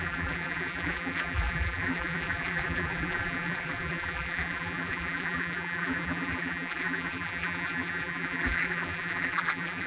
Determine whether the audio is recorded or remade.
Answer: remade